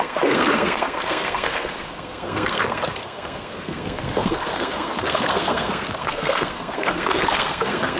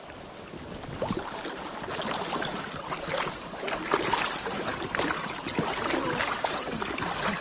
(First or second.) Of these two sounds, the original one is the second